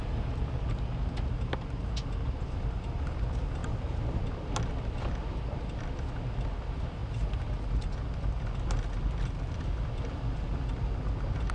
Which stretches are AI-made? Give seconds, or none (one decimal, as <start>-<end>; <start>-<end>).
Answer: 3.6-4.2